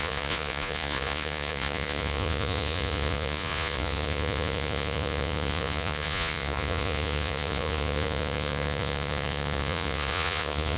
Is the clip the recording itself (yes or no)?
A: no